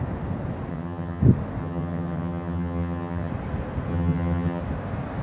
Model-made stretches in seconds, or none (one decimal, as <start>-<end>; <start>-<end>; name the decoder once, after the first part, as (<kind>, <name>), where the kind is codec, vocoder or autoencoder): 0.7-1.2 (vocoder, HiFi-GAN); 1.6-3.3; 3.9-4.6